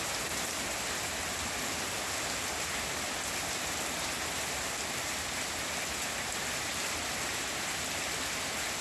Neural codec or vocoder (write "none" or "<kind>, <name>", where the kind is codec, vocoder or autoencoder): none